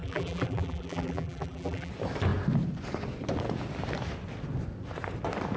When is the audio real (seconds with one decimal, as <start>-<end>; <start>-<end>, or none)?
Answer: 1.9-5.6